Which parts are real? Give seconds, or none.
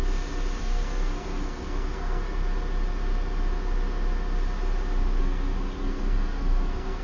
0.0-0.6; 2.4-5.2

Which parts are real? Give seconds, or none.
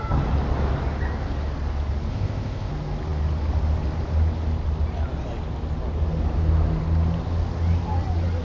0.0-2.1; 2.7-8.4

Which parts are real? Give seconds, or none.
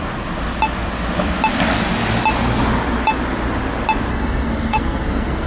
0.0-4.1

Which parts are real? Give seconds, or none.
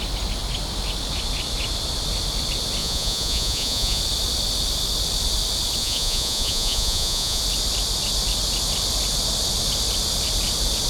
0.0-2.8; 4.0-5.8; 7.4-10.9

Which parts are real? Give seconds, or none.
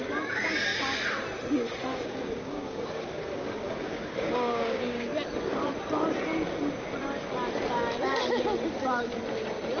0.0-1.9; 5.1-9.8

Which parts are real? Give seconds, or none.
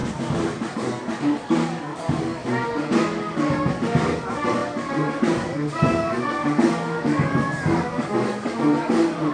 none